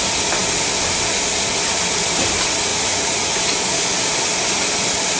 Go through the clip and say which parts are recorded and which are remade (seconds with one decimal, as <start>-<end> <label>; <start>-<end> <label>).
0.0-2.7 recorded; 2.7-3.3 remade; 3.3-5.2 recorded